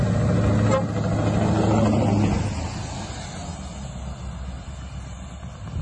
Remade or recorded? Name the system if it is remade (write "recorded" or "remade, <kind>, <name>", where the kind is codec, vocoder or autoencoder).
recorded